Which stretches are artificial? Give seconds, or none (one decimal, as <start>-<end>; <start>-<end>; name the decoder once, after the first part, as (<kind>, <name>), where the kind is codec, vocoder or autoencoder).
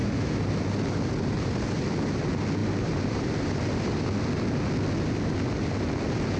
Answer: 0.0-0.5 (vocoder, BigVGAN v2); 2.6-3.2